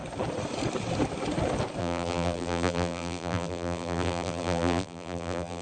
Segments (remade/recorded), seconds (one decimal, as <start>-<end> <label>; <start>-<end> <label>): 0.0-1.8 recorded; 1.8-5.6 remade